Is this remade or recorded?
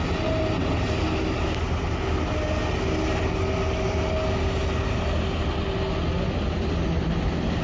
recorded